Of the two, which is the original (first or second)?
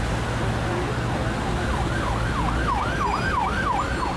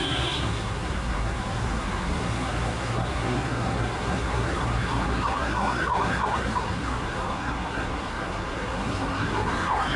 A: first